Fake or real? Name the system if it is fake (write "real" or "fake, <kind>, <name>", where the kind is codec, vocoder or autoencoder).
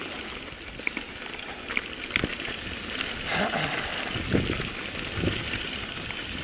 real